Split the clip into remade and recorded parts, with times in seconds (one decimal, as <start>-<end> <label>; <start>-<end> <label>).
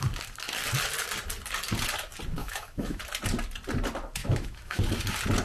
0.0-2.4 recorded; 2.4-3.0 remade; 3.0-4.2 recorded; 4.2-4.8 remade; 4.8-5.4 recorded